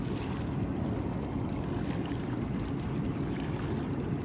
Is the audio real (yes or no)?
yes